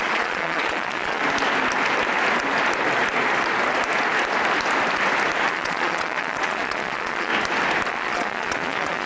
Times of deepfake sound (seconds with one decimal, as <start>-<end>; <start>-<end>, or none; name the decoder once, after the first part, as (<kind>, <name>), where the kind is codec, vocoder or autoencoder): 0.0-1.2 (vocoder, Vocos); 5.5-7.3; 7.9-9.1